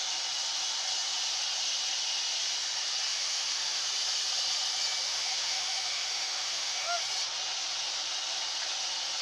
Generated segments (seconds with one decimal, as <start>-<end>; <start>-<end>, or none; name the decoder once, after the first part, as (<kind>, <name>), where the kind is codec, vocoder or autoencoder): 3.1-3.8 (autoencoder, DAC-VAE); 5.1-7.0